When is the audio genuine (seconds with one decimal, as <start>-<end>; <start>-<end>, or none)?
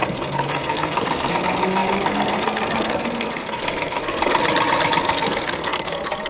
4.4-5.0